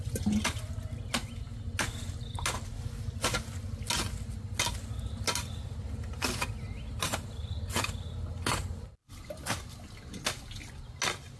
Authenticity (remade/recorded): recorded